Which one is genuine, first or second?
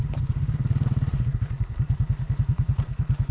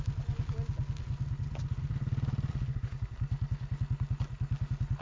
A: second